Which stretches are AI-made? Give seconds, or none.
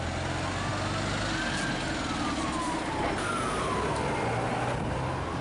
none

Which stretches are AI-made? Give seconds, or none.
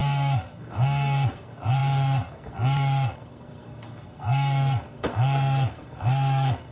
0.0-6.7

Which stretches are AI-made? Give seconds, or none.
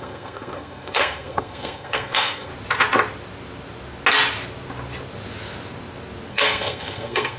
0.0-2.5; 6.3-7.4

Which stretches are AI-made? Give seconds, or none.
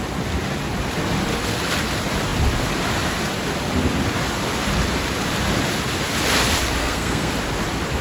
6.8-7.3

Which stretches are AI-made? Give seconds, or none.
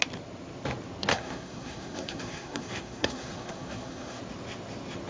1.1-4.2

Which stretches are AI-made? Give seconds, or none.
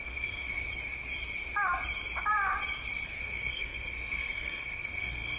0.0-0.6; 3.2-5.4